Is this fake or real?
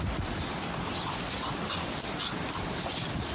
real